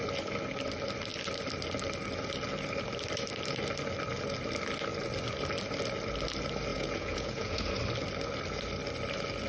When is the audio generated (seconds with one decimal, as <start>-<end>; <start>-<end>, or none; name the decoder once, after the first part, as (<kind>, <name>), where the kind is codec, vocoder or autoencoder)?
6.7-7.7 (vocoder, Vocos)